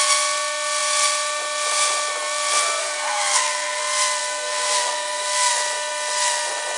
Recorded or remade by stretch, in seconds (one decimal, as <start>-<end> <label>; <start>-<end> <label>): 0.0-2.8 recorded; 2.8-3.8 remade; 3.8-4.2 recorded; 4.2-5.5 remade; 5.5-6.8 recorded